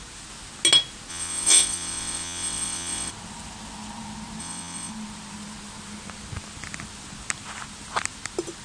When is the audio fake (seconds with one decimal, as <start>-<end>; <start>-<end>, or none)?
1.1-3.1; 4.4-4.9